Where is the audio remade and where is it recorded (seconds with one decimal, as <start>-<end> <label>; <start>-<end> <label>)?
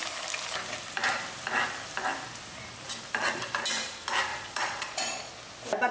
0.0-4.3 recorded; 4.3-5.3 remade; 5.3-5.9 recorded